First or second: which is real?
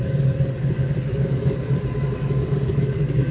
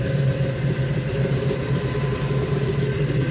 second